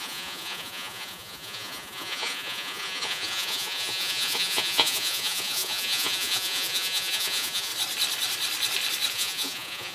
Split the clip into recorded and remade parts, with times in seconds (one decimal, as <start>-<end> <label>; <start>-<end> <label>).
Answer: 0.0-7.7 remade; 7.7-9.1 recorded; 9.1-9.9 remade